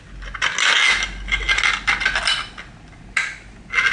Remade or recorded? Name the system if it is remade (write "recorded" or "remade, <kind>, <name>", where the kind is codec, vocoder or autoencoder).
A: recorded